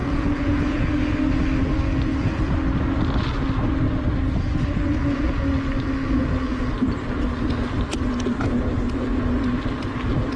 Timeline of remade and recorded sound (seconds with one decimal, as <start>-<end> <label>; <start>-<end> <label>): 0.0-0.9 remade; 0.9-10.4 recorded